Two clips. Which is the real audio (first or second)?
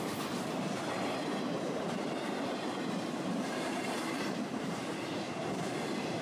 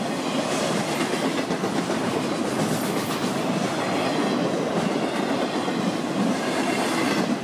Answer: second